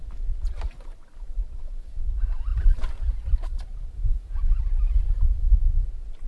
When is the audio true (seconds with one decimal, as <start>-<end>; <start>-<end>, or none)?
1.6-2.5; 3.0-6.3